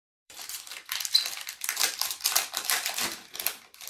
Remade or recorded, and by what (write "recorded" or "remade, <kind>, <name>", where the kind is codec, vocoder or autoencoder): remade, vocoder, BigVGAN v2